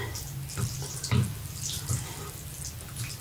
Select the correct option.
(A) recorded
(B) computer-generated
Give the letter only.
A